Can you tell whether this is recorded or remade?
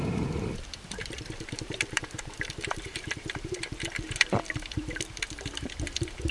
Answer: remade